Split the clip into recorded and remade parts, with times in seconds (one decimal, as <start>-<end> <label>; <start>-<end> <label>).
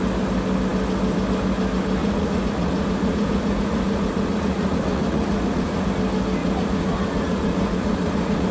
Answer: 0.0-2.0 recorded; 2.0-5.9 remade; 5.9-6.4 recorded; 6.4-8.5 remade